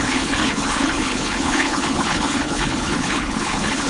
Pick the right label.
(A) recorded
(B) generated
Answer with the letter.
B